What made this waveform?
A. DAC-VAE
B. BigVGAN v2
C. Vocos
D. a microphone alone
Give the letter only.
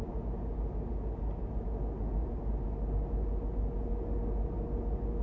D